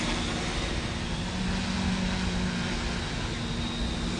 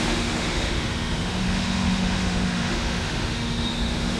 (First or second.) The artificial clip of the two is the second